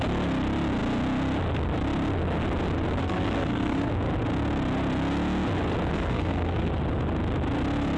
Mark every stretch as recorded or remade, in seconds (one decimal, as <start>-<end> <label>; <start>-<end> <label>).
0.0-3.0 recorded; 3.0-3.9 remade; 3.9-5.9 recorded; 5.9-6.7 remade; 6.7-8.0 recorded